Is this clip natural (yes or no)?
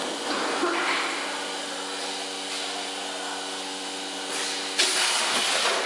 yes